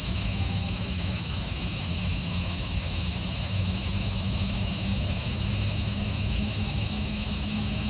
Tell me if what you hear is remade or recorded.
remade